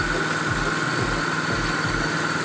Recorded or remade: recorded